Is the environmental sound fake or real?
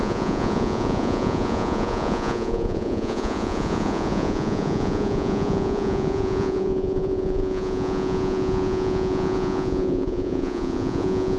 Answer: fake